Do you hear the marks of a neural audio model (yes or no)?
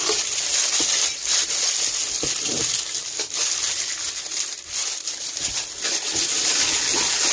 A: no